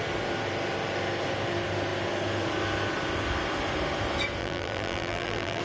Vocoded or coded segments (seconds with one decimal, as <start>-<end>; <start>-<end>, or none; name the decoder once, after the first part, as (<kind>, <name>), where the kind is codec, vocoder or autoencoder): 4.4-5.6 (vocoder, BigVGAN v2)